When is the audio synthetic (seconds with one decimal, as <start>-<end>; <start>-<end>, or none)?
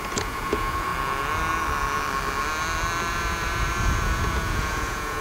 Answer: 0.0-0.9; 3.1-5.2